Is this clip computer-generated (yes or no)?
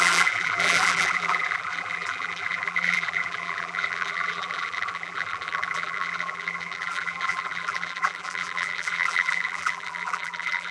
yes